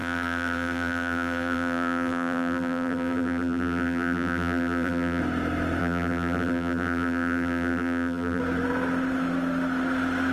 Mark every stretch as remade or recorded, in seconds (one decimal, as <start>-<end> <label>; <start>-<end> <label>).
0.0-5.2 remade; 5.2-5.8 recorded; 5.8-8.4 remade; 8.4-10.3 recorded